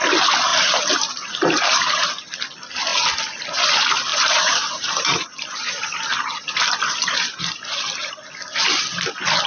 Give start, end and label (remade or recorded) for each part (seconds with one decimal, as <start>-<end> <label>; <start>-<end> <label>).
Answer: 0.0-0.5 recorded; 0.5-2.1 remade; 2.1-4.1 recorded; 4.1-8.1 remade; 8.1-9.5 recorded